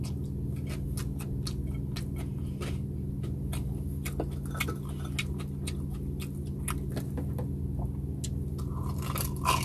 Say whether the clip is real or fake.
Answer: real